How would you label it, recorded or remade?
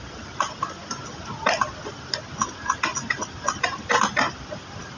recorded